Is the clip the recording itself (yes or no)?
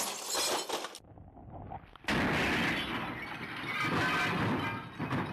yes